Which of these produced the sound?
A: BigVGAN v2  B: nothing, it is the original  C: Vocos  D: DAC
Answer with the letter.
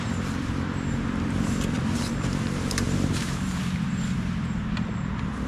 A